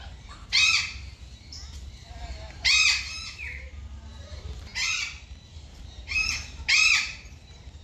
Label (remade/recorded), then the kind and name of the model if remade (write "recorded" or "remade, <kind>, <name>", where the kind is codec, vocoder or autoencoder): remade, vocoder, BigVGAN v2